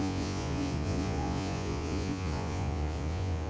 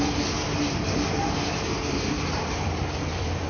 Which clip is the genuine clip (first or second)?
second